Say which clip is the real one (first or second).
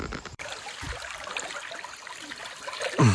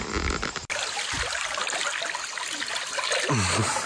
second